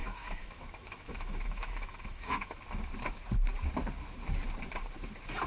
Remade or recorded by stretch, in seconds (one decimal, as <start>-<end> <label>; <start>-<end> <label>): 0.0-2.6 remade; 2.6-5.5 recorded